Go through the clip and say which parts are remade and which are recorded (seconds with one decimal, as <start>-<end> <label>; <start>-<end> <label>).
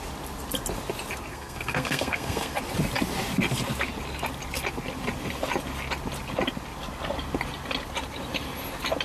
0.0-1.3 recorded; 1.3-2.6 remade; 2.6-9.0 recorded